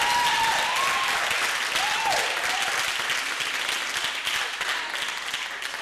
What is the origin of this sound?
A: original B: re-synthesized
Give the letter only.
A